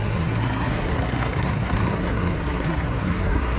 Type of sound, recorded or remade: remade